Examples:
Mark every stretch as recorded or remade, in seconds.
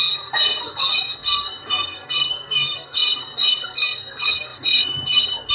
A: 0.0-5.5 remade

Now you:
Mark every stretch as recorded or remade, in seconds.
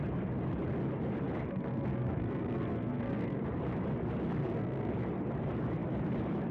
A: 0.0-1.5 recorded; 1.5-3.4 remade; 3.4-4.4 recorded; 4.4-4.9 remade; 4.9-6.5 recorded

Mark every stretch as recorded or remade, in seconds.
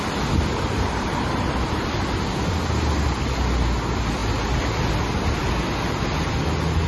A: 0.0-6.9 recorded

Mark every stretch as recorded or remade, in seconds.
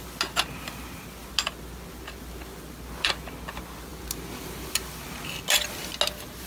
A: 0.0-6.5 recorded